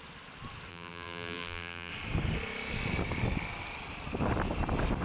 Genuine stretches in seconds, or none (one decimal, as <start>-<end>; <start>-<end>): 0.0-0.7; 1.9-5.0